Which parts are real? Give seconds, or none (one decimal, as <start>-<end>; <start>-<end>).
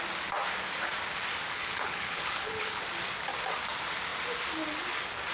0.0-1.5; 2.8-5.3